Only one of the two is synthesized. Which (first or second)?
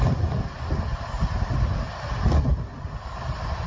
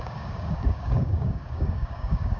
second